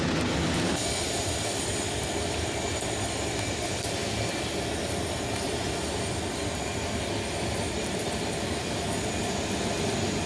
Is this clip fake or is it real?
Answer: real